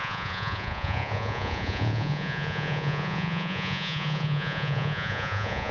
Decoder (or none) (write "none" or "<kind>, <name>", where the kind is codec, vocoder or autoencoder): vocoder, Vocos